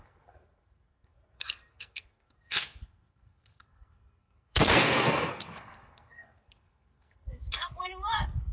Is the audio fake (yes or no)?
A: yes